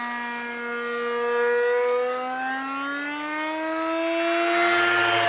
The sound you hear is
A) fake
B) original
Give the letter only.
B